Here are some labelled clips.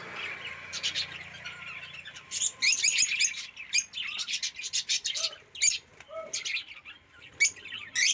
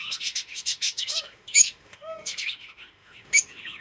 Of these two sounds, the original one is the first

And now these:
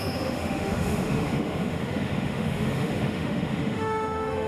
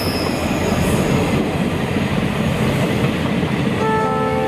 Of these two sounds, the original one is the second